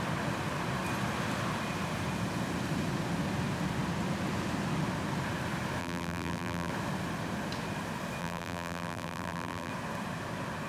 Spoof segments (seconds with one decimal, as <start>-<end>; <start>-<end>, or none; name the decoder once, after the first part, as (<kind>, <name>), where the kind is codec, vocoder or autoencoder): 5.8-6.7 (vocoder, BigVGAN v2); 8.2-9.7